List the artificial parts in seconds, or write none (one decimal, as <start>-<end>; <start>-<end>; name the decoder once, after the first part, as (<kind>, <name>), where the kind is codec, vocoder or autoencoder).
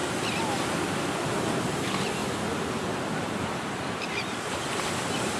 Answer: 1.6-2.2 (vocoder, BigVGAN v2); 3.2-5.4